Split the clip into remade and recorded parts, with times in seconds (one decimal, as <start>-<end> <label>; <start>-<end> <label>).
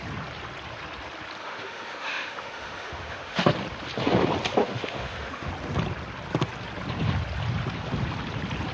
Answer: 0.0-1.4 recorded; 1.4-3.5 remade; 3.5-4.6 recorded; 4.6-5.5 remade; 5.5-8.7 recorded